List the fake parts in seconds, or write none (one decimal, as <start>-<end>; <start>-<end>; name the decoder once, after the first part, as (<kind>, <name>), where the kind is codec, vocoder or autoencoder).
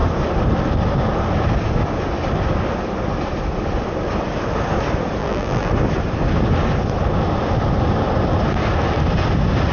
5.2-5.7 (vocoder, BigVGAN v2)